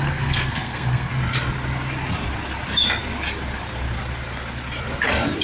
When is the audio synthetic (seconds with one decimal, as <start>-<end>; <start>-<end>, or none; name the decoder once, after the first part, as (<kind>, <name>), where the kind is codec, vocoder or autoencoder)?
0.0-1.1 (codec, SNAC)